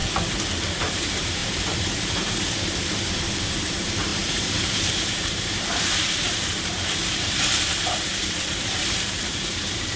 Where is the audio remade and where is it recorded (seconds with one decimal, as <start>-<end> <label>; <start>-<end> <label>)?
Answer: 0.0-0.8 recorded; 0.8-10.0 remade